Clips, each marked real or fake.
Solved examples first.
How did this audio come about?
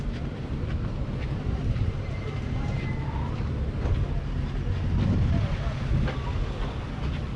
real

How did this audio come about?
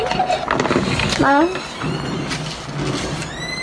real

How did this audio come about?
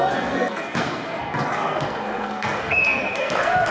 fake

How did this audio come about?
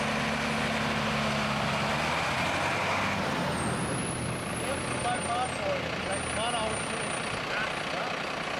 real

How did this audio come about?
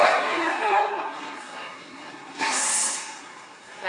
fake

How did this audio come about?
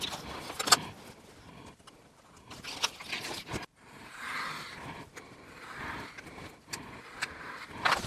real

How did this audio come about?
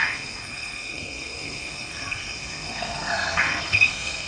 fake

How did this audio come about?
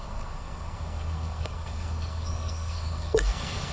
fake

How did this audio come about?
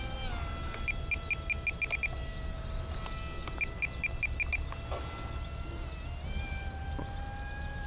real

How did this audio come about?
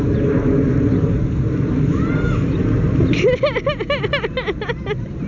real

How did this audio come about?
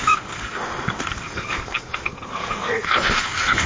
fake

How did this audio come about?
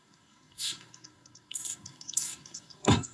fake